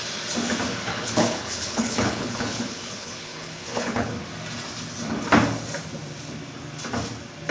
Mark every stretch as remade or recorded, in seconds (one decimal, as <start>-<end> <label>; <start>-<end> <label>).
0.0-0.9 recorded; 0.9-4.1 remade; 4.1-7.5 recorded